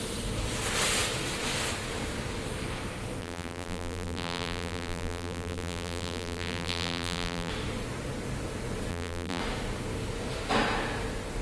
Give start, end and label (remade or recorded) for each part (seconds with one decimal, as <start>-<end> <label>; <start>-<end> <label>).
0.0-3.2 recorded; 3.2-7.5 remade; 7.5-8.9 recorded; 8.9-9.4 remade; 9.4-11.4 recorded

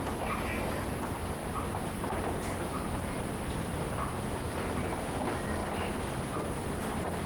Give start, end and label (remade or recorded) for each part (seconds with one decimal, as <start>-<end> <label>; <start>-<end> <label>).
0.0-1.4 recorded; 1.4-4.9 remade; 4.9-7.3 recorded

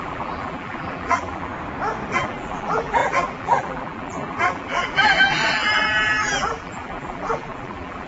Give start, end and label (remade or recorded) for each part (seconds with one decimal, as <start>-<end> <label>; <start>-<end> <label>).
0.0-1.5 remade; 1.5-2.1 recorded; 2.1-8.1 remade

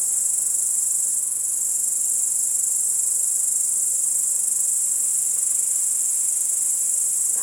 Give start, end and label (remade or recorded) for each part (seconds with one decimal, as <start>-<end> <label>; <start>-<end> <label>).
0.0-1.1 recorded; 1.1-1.7 remade; 1.7-2.9 recorded; 2.9-3.9 remade; 3.9-5.1 recorded; 5.1-6.0 remade; 6.0-7.4 recorded

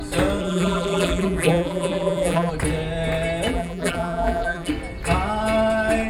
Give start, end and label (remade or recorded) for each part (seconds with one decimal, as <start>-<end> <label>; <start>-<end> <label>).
0.0-0.4 recorded; 0.4-2.5 remade; 2.5-3.5 recorded; 3.5-4.7 remade; 4.7-6.1 recorded